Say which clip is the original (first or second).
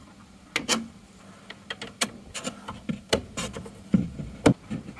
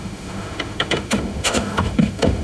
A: first